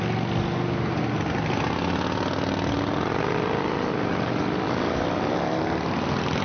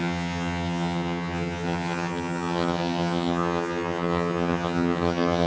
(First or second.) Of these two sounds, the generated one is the second